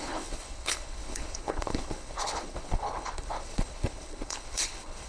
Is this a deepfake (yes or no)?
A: yes